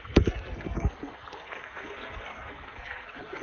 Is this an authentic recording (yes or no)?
no